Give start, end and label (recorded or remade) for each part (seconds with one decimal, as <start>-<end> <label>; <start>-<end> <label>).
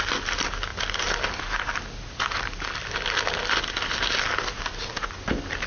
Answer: 0.0-5.7 recorded